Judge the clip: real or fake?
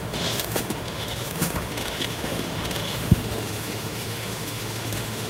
fake